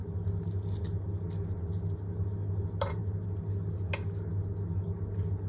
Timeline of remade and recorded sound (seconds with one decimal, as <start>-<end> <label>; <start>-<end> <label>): 0.0-5.5 recorded